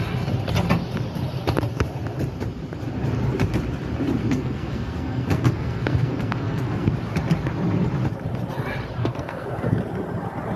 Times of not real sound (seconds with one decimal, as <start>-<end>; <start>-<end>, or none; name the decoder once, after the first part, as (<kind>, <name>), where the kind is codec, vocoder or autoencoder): 4.2-6.9 (codec, SNAC); 9.0-9.8